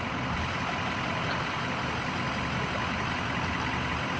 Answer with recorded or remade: recorded